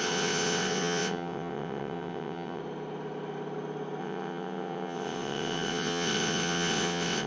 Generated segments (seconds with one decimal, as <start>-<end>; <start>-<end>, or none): 0.0-2.6; 4.0-7.3